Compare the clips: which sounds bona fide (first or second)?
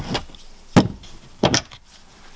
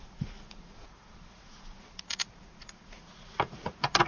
first